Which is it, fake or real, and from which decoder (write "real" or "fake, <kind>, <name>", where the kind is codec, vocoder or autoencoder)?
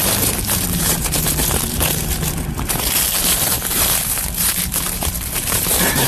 fake, vocoder, BigVGAN v2